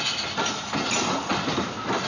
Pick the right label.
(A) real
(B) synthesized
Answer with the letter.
A